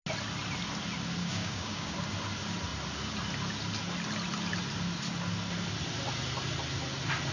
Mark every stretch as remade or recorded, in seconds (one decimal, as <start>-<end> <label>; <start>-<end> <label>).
0.0-1.2 recorded; 1.2-1.9 remade; 1.9-7.3 recorded